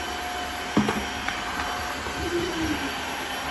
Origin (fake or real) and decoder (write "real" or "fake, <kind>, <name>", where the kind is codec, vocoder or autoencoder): real